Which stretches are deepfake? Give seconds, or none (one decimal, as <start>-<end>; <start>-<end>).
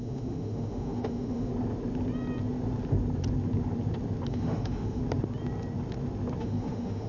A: 0.0-1.5; 4.3-5.0; 6.4-7.1